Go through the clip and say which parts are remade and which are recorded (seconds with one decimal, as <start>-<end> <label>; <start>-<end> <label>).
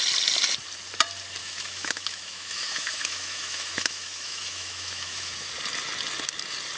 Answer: 0.0-1.4 recorded; 1.4-5.5 remade; 5.5-6.8 recorded